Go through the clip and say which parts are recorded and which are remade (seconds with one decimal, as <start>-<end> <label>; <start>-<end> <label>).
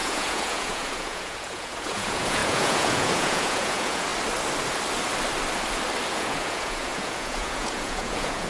0.0-4.1 remade; 4.1-6.1 recorded; 6.1-8.5 remade